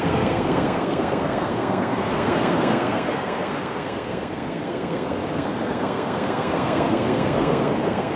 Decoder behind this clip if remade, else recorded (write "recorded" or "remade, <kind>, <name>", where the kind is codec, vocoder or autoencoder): remade, codec, SNAC